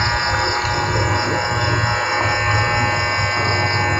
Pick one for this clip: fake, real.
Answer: real